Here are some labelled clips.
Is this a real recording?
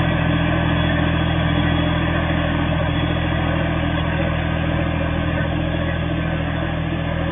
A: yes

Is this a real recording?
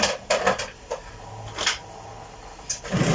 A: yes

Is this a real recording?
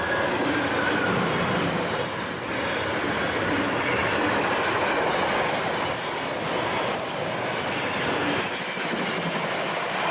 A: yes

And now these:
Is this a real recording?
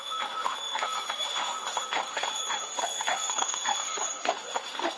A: no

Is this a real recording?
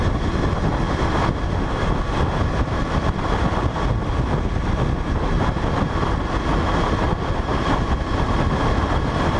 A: yes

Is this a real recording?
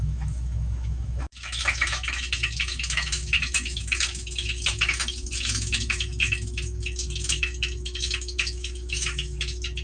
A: no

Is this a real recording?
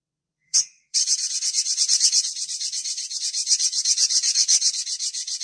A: no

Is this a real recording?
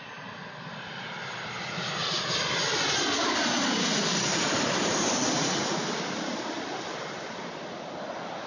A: yes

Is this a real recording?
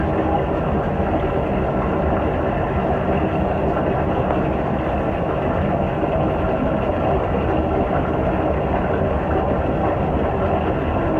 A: yes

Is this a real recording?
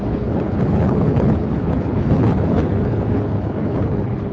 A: no